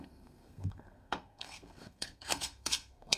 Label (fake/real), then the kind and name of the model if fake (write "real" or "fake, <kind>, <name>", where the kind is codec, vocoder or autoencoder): fake, codec, SNAC